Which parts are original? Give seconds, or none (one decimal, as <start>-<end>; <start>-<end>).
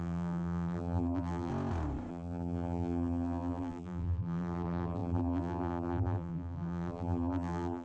1.5-2.1